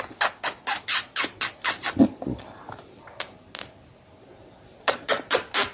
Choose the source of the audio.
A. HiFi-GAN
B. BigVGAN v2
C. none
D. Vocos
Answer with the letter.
C